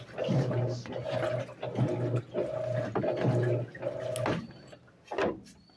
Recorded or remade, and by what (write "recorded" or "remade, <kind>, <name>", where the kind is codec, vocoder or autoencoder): recorded